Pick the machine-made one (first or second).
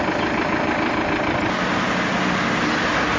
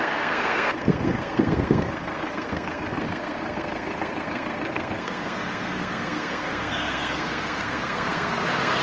second